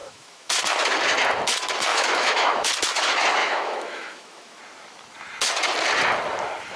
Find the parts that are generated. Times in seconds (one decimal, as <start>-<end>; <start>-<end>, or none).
0.0-0.6; 1.9-2.7; 3.4-4.6